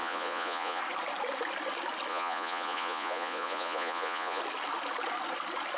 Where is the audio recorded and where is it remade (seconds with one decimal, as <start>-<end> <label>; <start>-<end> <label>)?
0.0-0.8 remade; 0.8-2.1 recorded; 2.1-4.4 remade; 4.4-5.8 recorded